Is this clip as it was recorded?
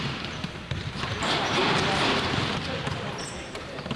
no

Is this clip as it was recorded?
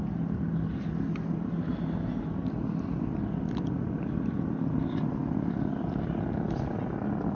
yes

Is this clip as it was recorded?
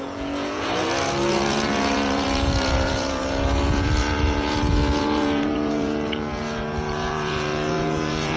no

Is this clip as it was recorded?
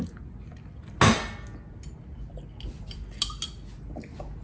yes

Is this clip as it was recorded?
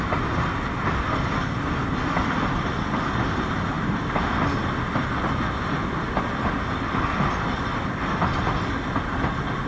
yes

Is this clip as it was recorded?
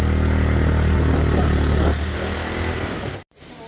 yes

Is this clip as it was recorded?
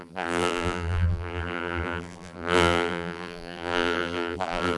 no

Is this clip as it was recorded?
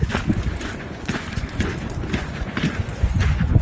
no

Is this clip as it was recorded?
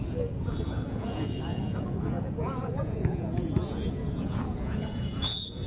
no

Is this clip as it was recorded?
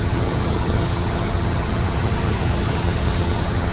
no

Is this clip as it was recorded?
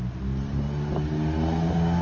yes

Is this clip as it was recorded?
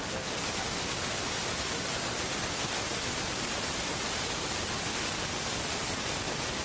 yes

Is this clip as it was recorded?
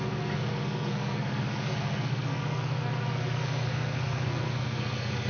no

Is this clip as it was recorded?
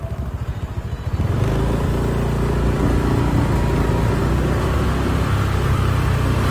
yes